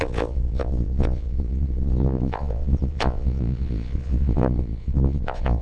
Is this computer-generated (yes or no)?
yes